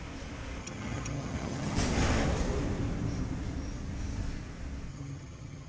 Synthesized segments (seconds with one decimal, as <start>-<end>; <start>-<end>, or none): 0.6-1.8; 4.9-5.7

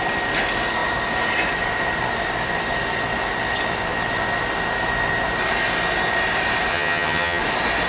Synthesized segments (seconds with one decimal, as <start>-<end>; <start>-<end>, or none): 6.7-7.4